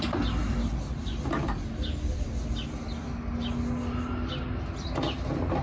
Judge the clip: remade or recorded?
recorded